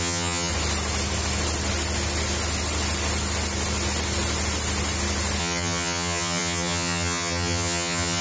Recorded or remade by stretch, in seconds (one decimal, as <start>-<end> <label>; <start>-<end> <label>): 0.0-0.5 remade; 0.5-5.4 recorded; 5.4-8.2 remade